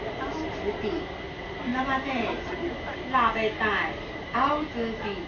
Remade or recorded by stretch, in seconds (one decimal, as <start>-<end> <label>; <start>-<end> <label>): 0.0-5.3 recorded